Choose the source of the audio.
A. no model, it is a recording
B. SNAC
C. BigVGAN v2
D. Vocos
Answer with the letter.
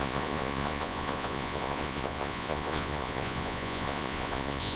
D